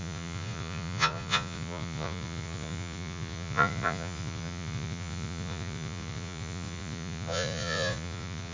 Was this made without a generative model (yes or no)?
no